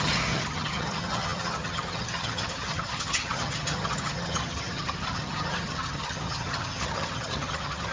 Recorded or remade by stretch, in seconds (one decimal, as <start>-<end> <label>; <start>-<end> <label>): 0.0-7.9 remade